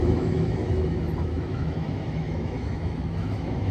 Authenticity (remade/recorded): remade